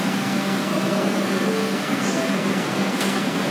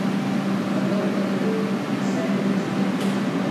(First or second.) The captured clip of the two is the second